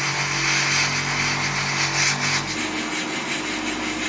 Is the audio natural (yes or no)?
yes